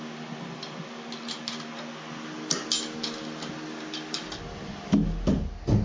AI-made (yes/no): no